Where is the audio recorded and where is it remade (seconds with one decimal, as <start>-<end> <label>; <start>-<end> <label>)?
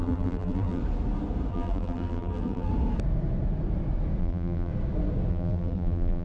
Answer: 0.0-0.8 remade; 0.8-1.5 recorded; 1.5-2.7 remade; 2.7-4.2 recorded; 4.2-4.7 remade; 4.7-5.3 recorded; 5.3-6.2 remade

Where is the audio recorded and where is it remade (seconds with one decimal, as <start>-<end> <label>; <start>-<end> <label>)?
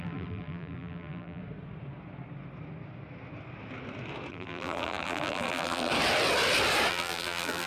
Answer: 0.0-1.4 remade; 1.4-4.3 recorded; 4.3-5.9 remade; 5.9-6.9 recorded; 6.9-7.7 remade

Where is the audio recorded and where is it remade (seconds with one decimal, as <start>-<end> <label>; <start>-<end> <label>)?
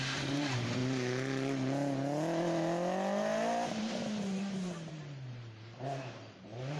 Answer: 0.0-0.8 remade; 0.8-4.9 recorded; 4.9-6.8 remade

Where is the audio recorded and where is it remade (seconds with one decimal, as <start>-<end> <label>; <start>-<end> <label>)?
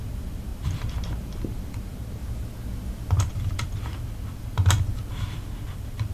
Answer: 0.0-2.2 remade; 2.2-3.2 recorded; 3.2-6.1 remade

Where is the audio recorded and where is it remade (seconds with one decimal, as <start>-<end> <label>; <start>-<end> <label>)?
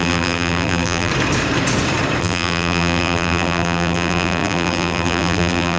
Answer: 0.0-1.1 remade; 1.1-2.2 recorded; 2.2-5.8 remade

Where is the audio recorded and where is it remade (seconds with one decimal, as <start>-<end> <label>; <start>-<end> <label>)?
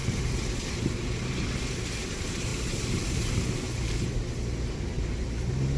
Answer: 0.0-2.5 recorded; 2.5-5.8 remade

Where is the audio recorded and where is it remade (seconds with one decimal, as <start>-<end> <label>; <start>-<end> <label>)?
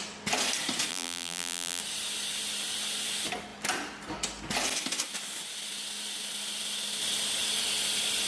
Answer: 0.0-0.9 recorded; 0.9-1.8 remade; 1.8-8.3 recorded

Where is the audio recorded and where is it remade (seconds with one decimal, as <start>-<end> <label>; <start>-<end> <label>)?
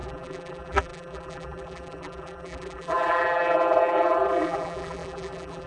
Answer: 0.0-5.7 remade